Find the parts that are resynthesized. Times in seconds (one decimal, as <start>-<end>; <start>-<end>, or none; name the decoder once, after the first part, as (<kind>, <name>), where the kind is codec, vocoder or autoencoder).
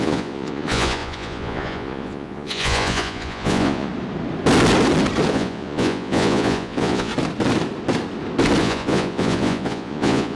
0.0-3.9 (vocoder, Vocos); 5.3-7.1; 8.6-10.3